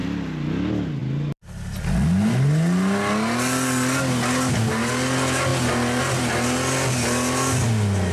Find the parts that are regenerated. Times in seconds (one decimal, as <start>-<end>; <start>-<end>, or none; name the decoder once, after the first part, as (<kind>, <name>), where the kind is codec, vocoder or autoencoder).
none